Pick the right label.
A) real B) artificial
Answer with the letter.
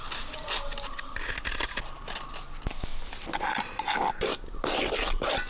A